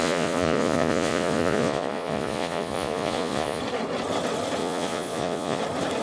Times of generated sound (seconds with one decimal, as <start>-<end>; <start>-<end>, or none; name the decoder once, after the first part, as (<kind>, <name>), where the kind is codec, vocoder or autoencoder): 0.0-3.6 (vocoder, Vocos); 4.6-5.6